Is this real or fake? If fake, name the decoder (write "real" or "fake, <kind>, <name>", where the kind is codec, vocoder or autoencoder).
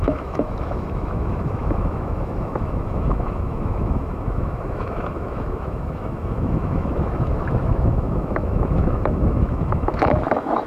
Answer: fake, autoencoder, DAC-VAE